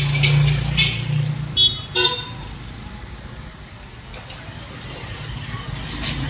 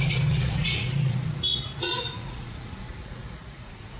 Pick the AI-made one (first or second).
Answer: second